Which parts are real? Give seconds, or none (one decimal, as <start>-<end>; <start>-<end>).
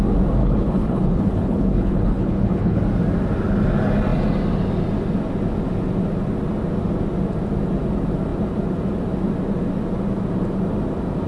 0.0-0.4; 2.8-11.3